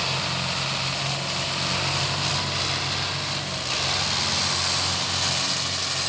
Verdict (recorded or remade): recorded